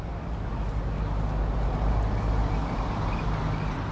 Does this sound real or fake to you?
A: real